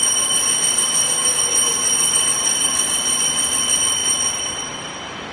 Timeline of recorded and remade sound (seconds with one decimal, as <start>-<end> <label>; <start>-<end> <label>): 0.0-4.0 recorded; 4.0-5.3 remade